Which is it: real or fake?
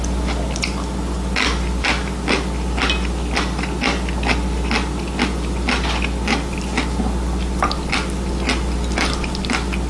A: real